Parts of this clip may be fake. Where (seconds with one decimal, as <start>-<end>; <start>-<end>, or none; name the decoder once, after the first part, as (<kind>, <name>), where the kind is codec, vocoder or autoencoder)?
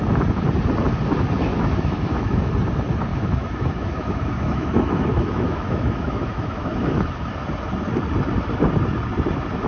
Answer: 1.5-2.5 (autoencoder, DAC-VAE); 3.1-7.3